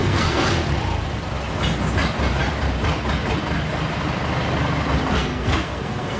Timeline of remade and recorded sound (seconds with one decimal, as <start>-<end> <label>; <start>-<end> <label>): 0.0-0.5 remade; 0.5-5.1 recorded; 5.1-6.2 remade